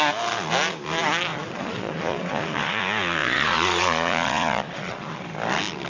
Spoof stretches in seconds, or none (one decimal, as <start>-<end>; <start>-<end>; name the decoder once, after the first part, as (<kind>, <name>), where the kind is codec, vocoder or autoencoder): 1.3-2.8 (vocoder, Vocos); 3.2-5.2